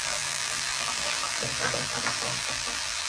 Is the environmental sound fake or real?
fake